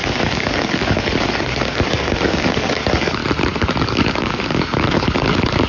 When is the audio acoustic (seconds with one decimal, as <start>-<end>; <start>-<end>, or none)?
3.2-3.8